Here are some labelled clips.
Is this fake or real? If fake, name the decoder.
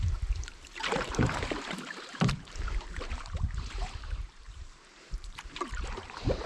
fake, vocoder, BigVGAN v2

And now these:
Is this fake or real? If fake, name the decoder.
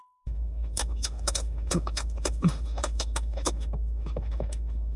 fake, autoencoder, DAC-VAE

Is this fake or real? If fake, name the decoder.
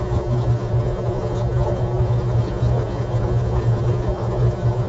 fake, vocoder, Vocos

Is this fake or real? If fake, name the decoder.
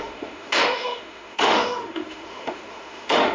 fake, autoencoder, DAC-VAE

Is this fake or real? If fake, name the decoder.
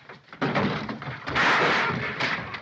fake, vocoder, BigVGAN v2